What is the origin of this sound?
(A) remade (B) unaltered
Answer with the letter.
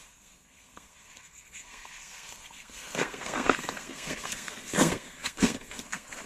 A